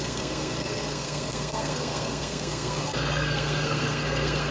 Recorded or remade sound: remade